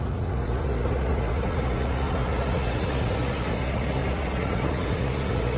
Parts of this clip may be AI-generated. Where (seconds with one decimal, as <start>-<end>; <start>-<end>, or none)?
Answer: 0.0-5.6